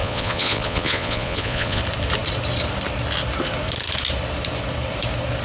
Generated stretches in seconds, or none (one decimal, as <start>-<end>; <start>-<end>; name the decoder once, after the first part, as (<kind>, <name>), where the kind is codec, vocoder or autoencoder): 0.0-1.8 (vocoder, Vocos)